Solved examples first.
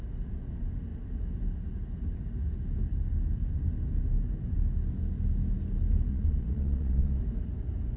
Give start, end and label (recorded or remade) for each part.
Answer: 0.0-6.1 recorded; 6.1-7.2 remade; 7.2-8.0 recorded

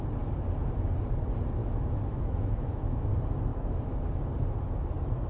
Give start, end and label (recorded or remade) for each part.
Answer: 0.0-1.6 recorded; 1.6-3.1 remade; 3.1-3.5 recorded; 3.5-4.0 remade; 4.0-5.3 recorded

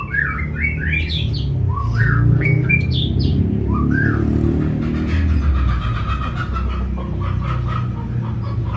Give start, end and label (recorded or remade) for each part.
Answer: 0.0-1.8 recorded; 1.8-2.7 remade; 2.7-8.8 recorded